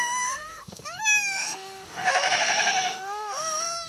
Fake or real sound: fake